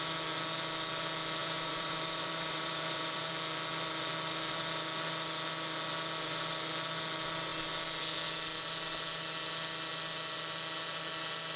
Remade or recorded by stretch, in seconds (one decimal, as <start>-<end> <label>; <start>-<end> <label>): 0.0-1.4 recorded; 1.4-3.3 remade; 3.3-11.6 recorded